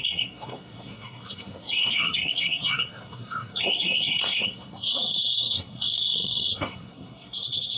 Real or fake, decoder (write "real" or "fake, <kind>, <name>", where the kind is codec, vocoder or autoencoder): fake, codec, SNAC